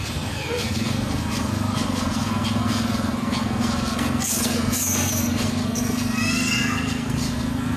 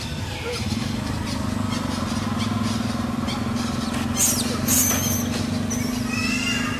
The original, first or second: second